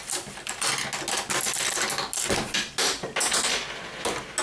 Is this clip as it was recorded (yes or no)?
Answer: yes